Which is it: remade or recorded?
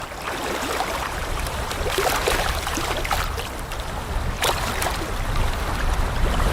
remade